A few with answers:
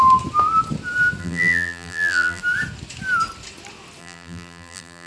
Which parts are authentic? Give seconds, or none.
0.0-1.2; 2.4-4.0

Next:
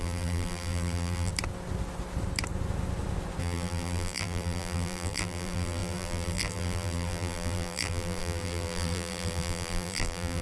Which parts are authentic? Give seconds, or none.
1.3-3.4

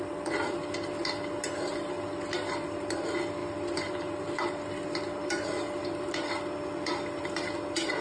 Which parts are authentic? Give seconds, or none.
0.0-8.0

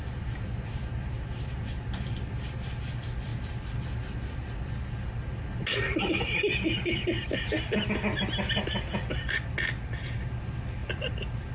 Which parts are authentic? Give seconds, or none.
0.0-11.5

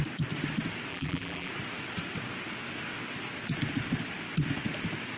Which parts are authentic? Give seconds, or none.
0.0-0.9; 1.5-5.2

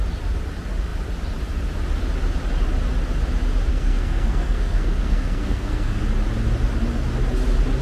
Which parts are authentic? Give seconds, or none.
0.0-3.7; 6.0-7.8

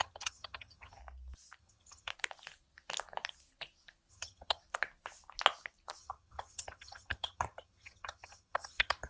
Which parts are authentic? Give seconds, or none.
1.0-1.6; 2.1-4.1; 4.6-6.0

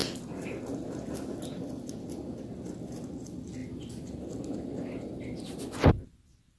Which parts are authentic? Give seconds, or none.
0.0-6.6